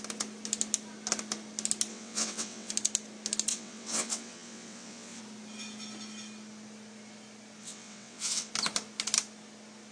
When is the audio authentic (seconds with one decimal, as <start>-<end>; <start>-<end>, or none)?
0.0-1.9; 2.7-3.5; 5.2-7.6; 8.5-9.9